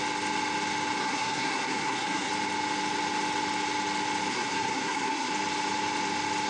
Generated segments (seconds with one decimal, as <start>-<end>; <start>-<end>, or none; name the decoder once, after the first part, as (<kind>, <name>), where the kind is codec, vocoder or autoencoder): 1.0-2.3 (codec, SNAC); 4.3-5.3